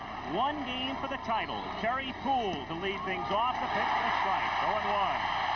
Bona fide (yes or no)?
yes